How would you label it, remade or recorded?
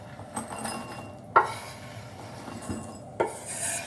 recorded